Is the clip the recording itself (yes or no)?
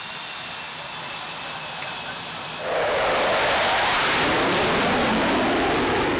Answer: yes